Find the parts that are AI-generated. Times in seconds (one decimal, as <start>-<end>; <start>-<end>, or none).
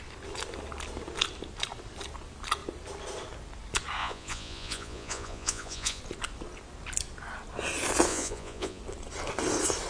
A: 4.0-6.0; 8.1-8.8